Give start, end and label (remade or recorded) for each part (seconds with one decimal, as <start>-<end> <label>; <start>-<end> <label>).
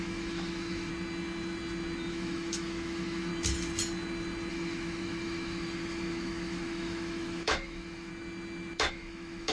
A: 0.0-0.9 remade; 0.9-2.1 recorded; 2.1-3.3 remade; 3.3-4.5 recorded; 4.5-8.1 remade; 8.1-8.9 recorded; 8.9-9.5 remade